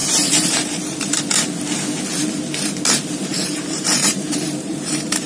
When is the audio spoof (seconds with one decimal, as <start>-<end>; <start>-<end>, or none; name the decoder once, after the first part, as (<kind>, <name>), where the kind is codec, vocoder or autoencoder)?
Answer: 0.0-1.2 (vocoder, BigVGAN v2); 3.3-5.3